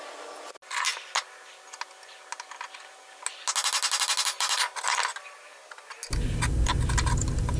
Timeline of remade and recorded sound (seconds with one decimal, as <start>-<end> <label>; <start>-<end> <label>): 0.0-7.6 recorded